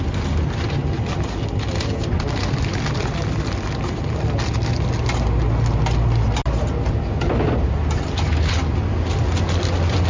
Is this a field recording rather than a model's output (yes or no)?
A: yes